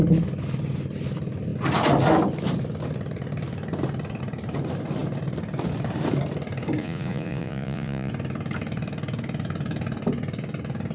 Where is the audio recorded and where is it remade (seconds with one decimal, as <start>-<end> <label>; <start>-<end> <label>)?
0.0-6.8 recorded; 6.8-8.1 remade; 8.1-10.9 recorded